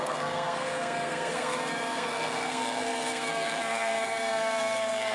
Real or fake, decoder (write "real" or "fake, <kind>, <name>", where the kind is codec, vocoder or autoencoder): fake, codec, SNAC